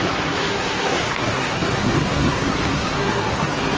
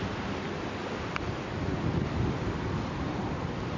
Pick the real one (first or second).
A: second